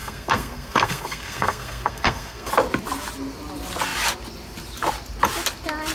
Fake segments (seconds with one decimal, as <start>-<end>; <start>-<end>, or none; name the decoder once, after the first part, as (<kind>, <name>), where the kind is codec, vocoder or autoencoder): 0.0-2.5 (codec, SNAC)